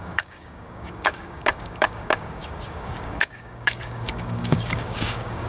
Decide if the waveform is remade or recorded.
remade